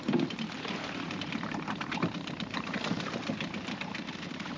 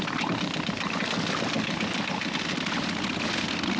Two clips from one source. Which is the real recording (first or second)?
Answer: second